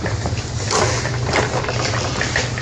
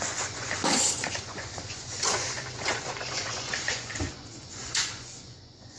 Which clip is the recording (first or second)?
first